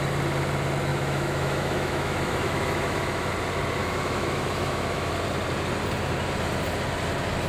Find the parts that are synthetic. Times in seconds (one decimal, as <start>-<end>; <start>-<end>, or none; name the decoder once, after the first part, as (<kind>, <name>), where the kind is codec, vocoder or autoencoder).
0.9-3.3 (autoencoder, DAC-VAE); 3.8-5.1